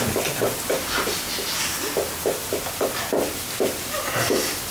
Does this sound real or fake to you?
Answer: real